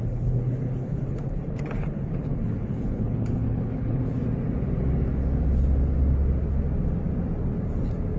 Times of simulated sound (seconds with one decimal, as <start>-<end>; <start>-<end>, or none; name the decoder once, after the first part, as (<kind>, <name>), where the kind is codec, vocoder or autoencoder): 0.0-4.2 (codec, HILCodec)